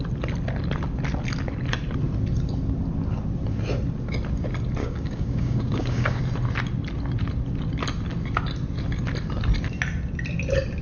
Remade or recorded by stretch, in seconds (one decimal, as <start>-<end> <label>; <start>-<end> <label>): 0.0-4.8 recorded; 4.8-6.2 remade; 6.2-10.8 recorded